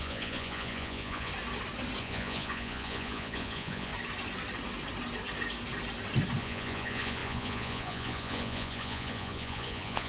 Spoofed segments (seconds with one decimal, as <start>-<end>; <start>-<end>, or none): 0.0-1.3; 2.0-3.9; 6.4-10.1